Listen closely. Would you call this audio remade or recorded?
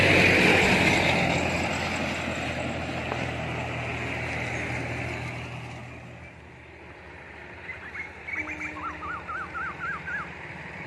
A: recorded